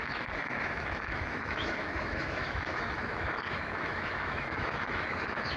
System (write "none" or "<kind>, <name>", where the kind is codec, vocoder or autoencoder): autoencoder, DAC-VAE